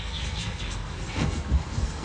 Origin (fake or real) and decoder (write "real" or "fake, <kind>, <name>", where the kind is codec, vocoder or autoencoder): fake, codec, SNAC